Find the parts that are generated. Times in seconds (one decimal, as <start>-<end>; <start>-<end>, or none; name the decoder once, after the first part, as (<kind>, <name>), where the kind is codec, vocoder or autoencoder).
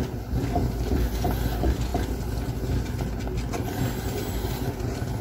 none